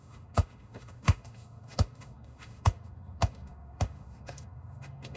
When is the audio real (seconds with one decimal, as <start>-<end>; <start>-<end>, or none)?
none